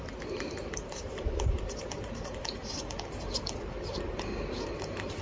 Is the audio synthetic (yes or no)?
yes